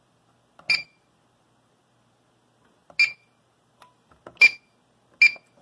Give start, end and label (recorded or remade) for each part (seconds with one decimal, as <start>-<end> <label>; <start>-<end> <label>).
0.0-5.6 recorded